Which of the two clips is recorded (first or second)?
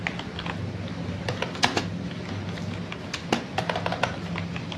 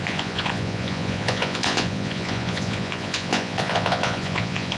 first